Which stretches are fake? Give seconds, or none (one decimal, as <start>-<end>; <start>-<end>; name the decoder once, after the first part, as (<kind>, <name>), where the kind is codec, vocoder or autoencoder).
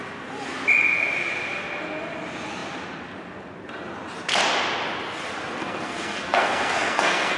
5.6-7.4 (codec, SNAC)